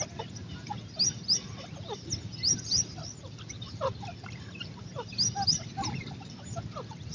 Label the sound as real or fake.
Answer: real